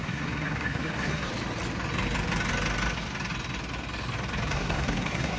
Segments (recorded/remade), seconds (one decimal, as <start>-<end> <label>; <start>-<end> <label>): 0.0-1.3 remade; 1.3-4.5 recorded; 4.5-5.4 remade

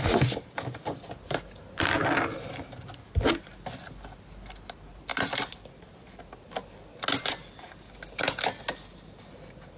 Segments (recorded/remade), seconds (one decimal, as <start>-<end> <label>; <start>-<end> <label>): 0.0-5.1 recorded; 5.1-6.2 remade; 6.2-9.8 recorded

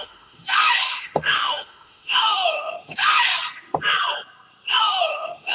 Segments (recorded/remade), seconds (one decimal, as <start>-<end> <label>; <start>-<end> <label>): 0.0-3.3 remade; 3.3-4.8 recorded; 4.8-5.5 remade

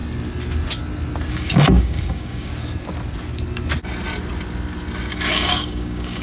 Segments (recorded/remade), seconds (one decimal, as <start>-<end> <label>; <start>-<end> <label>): 0.0-1.3 recorded; 1.3-2.5 remade; 2.5-5.1 recorded; 5.1-6.2 remade

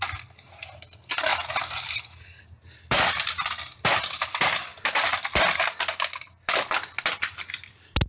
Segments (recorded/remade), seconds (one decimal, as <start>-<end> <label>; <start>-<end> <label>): 0.0-8.1 recorded

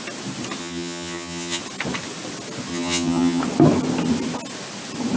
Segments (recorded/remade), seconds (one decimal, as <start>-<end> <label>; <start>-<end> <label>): 0.0-0.6 recorded; 0.6-1.6 remade; 1.6-2.7 recorded; 2.7-3.4 remade; 3.4-5.2 recorded

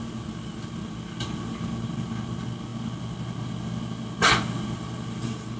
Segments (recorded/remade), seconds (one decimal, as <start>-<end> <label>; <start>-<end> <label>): 0.0-5.6 recorded